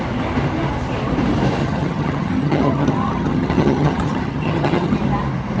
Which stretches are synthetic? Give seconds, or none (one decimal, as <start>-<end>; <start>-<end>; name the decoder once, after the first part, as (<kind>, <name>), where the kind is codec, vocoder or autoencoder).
1.6-5.0 (vocoder, HiFi-GAN)